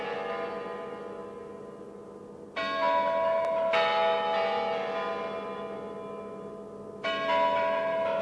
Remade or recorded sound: recorded